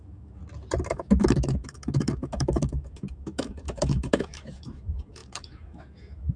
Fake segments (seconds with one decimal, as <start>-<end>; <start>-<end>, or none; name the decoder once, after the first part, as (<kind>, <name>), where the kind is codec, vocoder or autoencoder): 0.0-0.4 (autoencoder, DAC-VAE); 0.9-6.4